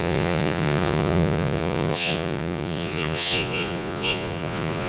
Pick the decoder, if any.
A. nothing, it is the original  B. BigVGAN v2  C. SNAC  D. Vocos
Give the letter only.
D